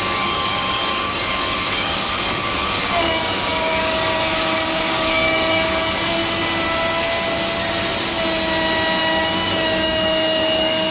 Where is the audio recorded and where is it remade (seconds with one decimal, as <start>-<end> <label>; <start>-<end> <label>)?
0.0-6.2 remade; 6.2-9.0 recorded; 9.0-10.9 remade